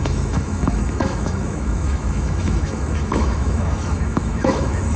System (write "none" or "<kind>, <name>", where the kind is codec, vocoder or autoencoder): autoencoder, DAC-VAE